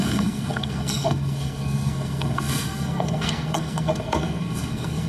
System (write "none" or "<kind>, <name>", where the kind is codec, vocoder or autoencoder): codec, SNAC